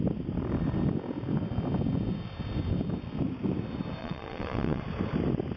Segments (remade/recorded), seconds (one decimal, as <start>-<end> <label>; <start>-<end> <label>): 0.0-4.0 recorded; 4.0-4.8 remade; 4.8-5.6 recorded